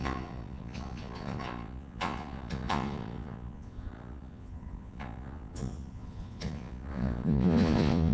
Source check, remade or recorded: remade